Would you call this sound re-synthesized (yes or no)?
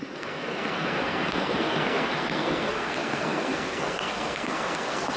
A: yes